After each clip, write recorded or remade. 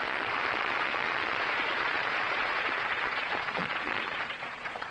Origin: remade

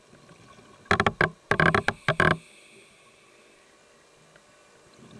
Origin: recorded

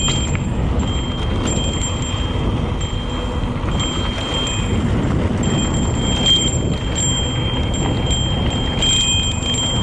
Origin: recorded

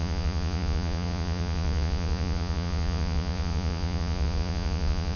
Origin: remade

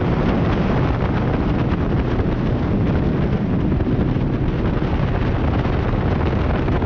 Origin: recorded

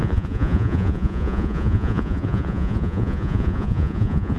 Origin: remade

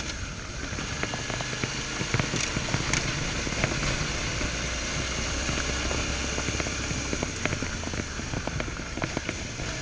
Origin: recorded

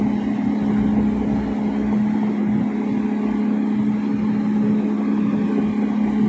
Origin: recorded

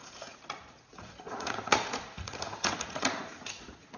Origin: remade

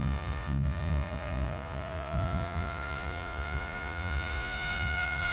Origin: remade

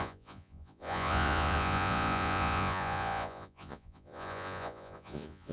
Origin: remade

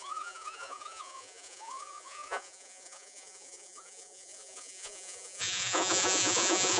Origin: remade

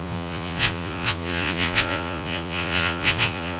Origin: remade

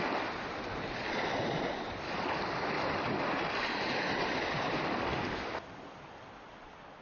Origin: recorded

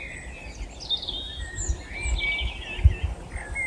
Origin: recorded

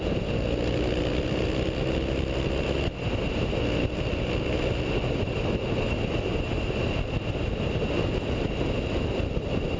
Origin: recorded